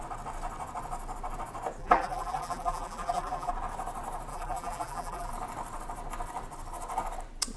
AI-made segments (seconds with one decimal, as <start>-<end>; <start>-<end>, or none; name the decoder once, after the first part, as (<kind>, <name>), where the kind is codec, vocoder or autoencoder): 1.8-3.5 (vocoder, BigVGAN v2); 4.3-5.3